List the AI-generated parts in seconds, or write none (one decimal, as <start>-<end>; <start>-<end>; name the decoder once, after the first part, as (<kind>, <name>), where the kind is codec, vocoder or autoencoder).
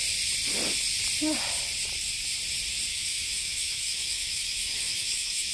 2.9-5.5 (autoencoder, DAC-VAE)